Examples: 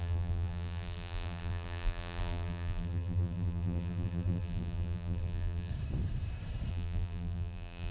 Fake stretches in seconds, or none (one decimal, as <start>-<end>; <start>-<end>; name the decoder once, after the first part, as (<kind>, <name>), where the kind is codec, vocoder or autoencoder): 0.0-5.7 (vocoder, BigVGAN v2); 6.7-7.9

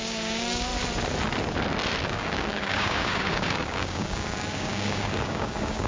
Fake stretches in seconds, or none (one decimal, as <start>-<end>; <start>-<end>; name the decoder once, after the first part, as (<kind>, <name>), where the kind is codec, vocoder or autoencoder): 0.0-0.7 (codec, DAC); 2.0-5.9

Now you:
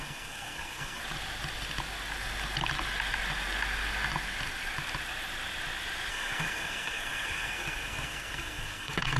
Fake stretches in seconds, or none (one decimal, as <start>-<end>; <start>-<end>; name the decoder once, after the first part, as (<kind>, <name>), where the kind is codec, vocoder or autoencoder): 0.0-1.0 (codec, SNAC); 6.1-9.2

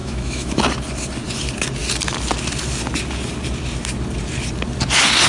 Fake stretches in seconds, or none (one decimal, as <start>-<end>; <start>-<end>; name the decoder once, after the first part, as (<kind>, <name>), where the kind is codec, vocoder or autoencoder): 0.0-0.6 (autoencoder, DAC-VAE)